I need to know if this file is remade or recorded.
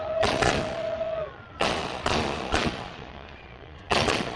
remade